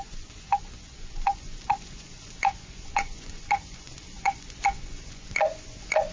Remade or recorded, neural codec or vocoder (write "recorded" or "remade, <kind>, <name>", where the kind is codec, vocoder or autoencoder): remade, vocoder, Vocos